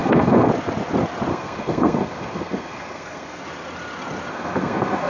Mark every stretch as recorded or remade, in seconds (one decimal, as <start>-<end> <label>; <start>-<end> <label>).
0.0-0.5 remade; 0.5-1.3 recorded; 1.3-3.4 remade; 3.4-4.3 recorded; 4.3-5.1 remade

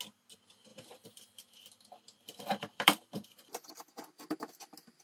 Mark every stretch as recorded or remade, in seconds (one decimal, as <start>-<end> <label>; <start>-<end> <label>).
0.0-0.7 recorded; 0.7-3.7 remade; 3.7-5.0 recorded

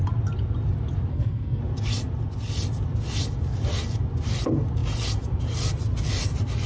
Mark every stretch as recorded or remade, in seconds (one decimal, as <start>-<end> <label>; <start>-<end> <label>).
0.0-1.1 recorded; 1.1-1.6 remade; 1.6-6.7 recorded

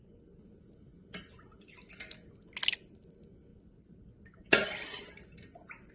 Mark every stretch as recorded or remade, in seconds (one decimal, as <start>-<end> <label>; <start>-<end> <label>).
0.0-5.9 recorded

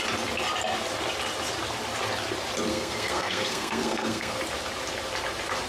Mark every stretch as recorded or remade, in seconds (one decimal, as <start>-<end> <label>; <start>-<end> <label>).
0.0-2.7 recorded; 2.7-4.4 remade; 4.4-5.7 recorded

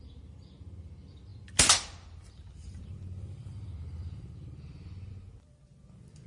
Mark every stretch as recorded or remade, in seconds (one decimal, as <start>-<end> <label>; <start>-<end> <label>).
0.0-6.3 remade

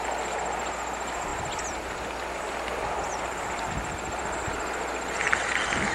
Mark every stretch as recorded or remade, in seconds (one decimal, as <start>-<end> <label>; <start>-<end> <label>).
0.0-5.9 recorded

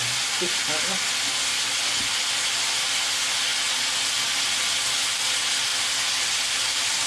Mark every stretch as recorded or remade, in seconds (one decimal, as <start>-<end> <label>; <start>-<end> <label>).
0.0-7.1 recorded